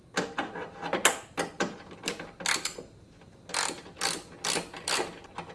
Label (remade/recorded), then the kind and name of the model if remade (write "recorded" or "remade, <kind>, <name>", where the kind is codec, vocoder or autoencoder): recorded